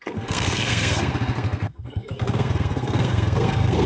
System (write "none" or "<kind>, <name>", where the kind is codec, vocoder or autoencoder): codec, SNAC